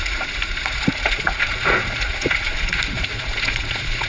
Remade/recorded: remade